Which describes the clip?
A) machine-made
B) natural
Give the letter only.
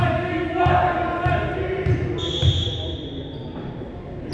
B